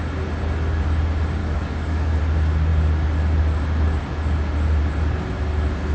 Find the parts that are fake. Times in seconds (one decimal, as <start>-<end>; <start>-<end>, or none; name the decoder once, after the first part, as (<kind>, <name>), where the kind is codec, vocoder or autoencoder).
1.4-2.2 (codec, DAC)